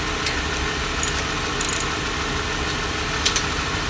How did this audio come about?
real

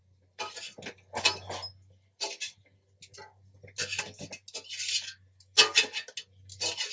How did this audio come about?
real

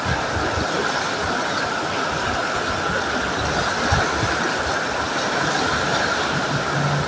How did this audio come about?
real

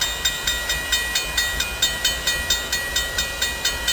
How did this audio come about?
real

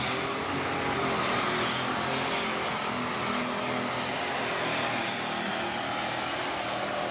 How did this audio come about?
real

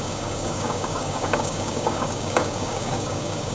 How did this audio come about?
fake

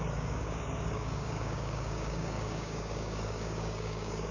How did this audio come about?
fake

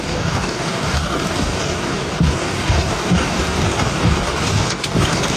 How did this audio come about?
fake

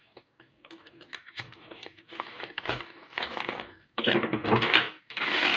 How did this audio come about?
fake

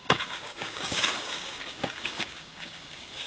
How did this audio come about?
fake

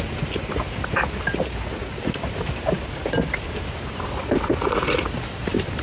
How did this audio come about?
real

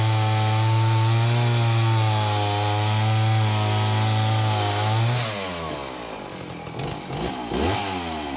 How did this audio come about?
real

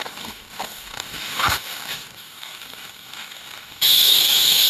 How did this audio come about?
fake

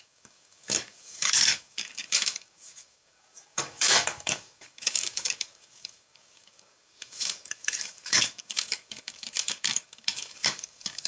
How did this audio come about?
fake